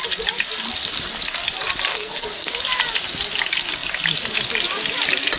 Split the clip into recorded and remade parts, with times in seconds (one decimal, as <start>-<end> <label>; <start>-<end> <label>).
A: 0.0-1.9 recorded; 1.9-2.6 remade; 2.6-5.4 recorded